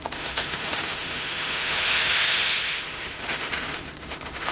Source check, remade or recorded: remade